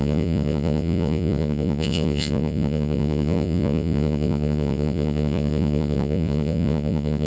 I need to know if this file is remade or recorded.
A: remade